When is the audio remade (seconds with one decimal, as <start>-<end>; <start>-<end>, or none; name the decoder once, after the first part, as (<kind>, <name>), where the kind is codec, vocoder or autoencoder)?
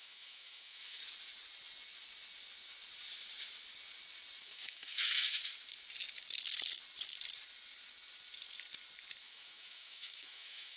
0.0-1.0 (autoencoder, DAC-VAE); 4.4-5.4; 9.2-10.8